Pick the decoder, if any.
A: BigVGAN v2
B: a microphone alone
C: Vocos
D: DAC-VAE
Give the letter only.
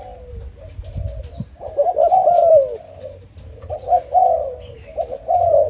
B